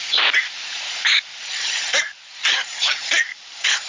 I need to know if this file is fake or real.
fake